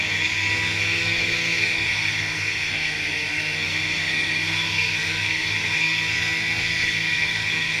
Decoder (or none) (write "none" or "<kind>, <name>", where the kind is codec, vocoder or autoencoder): codec, SNAC